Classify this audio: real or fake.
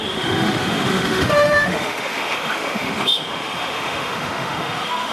fake